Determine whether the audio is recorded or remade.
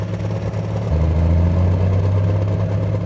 recorded